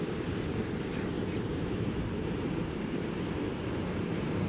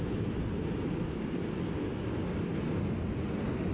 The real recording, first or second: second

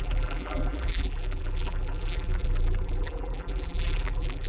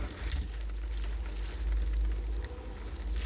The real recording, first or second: second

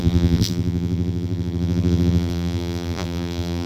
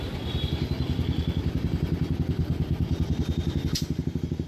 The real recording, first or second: second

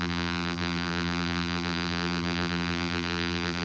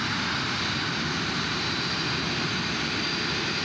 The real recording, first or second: second